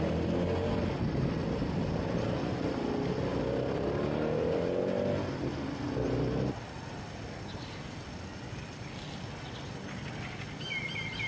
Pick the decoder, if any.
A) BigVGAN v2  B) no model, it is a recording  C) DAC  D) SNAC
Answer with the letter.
B